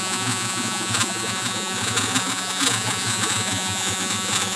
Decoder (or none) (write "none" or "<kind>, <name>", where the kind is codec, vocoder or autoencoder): vocoder, Vocos